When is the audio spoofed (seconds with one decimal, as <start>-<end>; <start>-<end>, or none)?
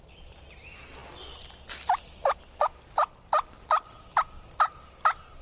none